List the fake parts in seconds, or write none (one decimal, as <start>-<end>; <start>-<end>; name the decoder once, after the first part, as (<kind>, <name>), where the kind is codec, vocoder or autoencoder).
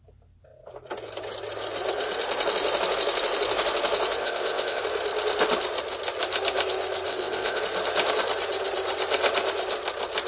4.2-4.8 (codec, ZipCodec); 7.1-7.6